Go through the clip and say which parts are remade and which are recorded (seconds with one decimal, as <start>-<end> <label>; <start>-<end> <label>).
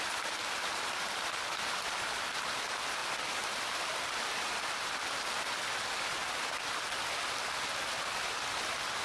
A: 0.0-9.0 recorded